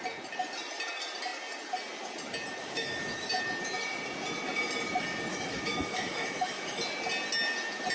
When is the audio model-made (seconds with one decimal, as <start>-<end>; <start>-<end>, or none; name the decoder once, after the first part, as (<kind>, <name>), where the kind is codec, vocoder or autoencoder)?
2.6-3.3 (autoencoder, DAC-VAE); 5.3-6.8